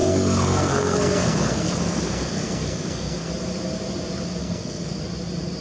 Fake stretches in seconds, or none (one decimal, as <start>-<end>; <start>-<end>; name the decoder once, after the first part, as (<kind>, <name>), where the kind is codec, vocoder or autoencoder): 0.0-3.3 (codec, SNAC); 4.4-5.0